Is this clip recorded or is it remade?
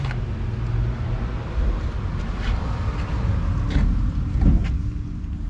recorded